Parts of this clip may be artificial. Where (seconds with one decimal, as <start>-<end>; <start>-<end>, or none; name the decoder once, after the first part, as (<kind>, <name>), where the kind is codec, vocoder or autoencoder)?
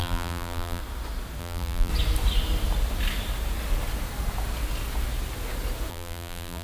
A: 0.0-0.8 (vocoder, BigVGAN v2); 1.4-1.9; 5.9-6.6